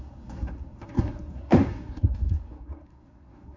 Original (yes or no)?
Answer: no